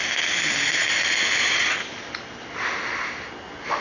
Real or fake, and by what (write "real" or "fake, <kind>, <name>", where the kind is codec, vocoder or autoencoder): real